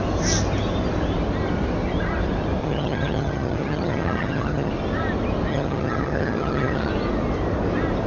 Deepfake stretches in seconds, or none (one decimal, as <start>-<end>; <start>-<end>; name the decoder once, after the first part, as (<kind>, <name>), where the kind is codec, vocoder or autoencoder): 2.6-4.7 (vocoder, HiFi-GAN); 5.5-6.9